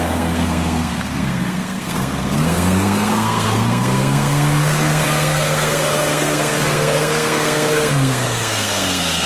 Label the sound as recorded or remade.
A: remade